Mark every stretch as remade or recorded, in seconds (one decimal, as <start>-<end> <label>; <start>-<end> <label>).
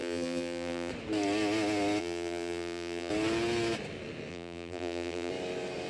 0.0-0.9 remade; 0.9-2.0 recorded; 2.0-3.1 remade; 3.1-4.3 recorded; 4.3-5.3 remade; 5.3-5.9 recorded